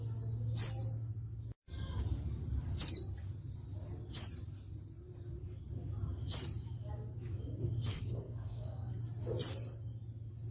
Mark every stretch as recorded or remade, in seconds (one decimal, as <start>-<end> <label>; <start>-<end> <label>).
0.0-7.9 recorded; 7.9-8.9 remade; 8.9-10.5 recorded

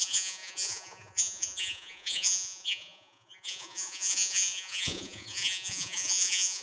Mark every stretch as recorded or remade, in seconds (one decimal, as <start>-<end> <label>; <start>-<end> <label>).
0.0-6.6 remade